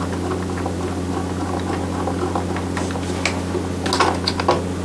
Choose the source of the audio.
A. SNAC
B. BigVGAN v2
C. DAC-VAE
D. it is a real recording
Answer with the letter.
D